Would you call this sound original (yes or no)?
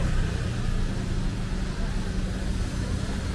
yes